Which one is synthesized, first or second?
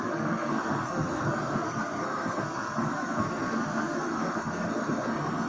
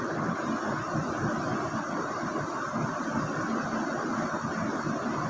first